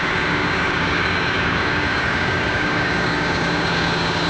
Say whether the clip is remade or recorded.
remade